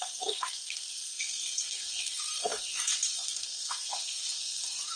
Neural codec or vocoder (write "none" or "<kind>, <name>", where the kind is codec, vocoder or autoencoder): codec, SNAC